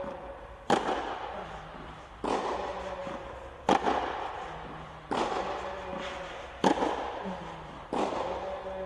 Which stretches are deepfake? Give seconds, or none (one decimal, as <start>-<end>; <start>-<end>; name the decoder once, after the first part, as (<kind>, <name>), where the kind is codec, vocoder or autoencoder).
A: none